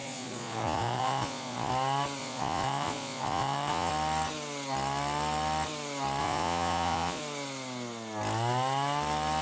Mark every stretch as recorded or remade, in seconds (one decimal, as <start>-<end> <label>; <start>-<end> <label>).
0.0-1.7 remade; 1.7-2.2 recorded; 2.2-3.9 remade; 3.9-6.2 recorded; 6.2-7.2 remade; 7.2-9.4 recorded